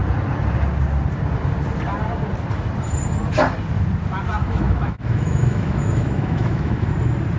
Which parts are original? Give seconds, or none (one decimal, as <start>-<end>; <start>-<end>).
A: 0.0-4.4; 6.9-7.4